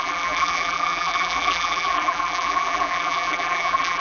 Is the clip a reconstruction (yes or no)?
yes